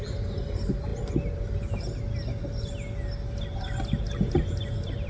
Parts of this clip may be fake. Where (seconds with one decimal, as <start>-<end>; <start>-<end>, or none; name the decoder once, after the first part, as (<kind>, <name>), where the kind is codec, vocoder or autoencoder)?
none